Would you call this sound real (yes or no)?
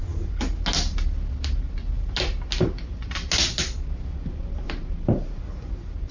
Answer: yes